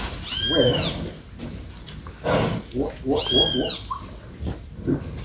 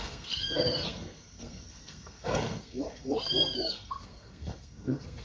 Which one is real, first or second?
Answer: first